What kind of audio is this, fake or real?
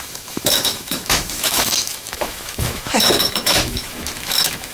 fake